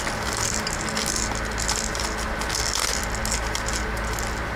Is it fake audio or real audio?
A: real